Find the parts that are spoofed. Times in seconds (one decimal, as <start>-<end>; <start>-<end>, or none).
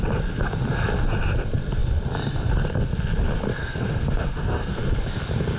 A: 3.6-4.8